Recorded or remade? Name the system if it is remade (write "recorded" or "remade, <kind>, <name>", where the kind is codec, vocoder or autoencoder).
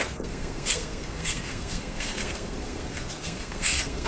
remade, codec, SNAC